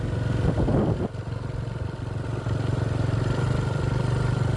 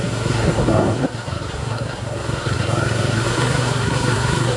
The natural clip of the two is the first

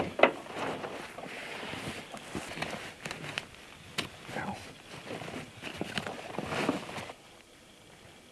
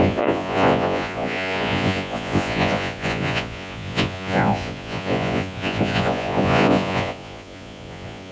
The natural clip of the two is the first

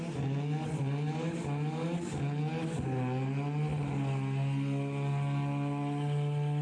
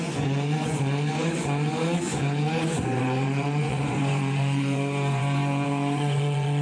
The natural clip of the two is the first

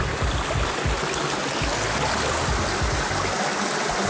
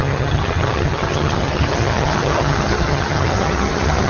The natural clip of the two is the first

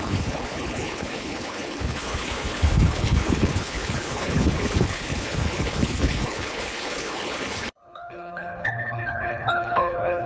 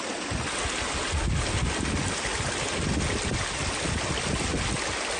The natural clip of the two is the second